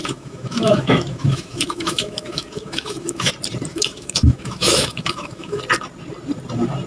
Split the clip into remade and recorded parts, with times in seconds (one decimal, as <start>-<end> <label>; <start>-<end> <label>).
0.0-3.3 remade; 3.3-3.7 recorded; 3.7-5.6 remade; 5.6-6.9 recorded

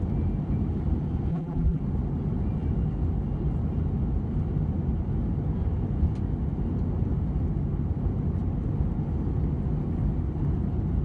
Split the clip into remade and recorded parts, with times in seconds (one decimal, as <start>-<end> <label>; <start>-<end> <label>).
0.0-1.3 recorded; 1.3-1.8 remade; 1.8-11.0 recorded

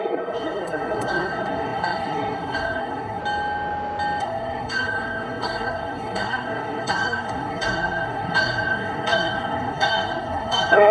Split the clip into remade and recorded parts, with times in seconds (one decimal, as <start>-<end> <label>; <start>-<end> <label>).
0.0-3.2 remade; 3.2-4.2 recorded; 4.2-10.9 remade

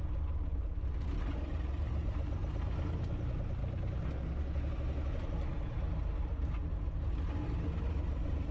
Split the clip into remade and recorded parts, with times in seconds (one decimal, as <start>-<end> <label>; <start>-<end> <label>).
0.0-8.5 recorded

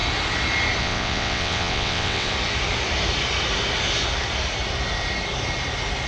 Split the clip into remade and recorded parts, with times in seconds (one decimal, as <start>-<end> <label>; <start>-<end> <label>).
0.0-0.8 recorded; 0.8-2.3 remade; 2.3-6.1 recorded

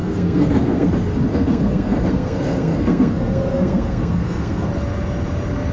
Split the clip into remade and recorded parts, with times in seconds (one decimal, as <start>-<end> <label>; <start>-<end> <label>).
0.0-0.9 remade; 0.9-1.3 recorded; 1.3-4.7 remade; 4.7-5.7 recorded

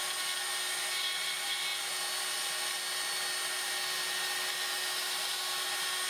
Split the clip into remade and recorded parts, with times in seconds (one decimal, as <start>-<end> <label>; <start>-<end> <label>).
0.0-6.1 recorded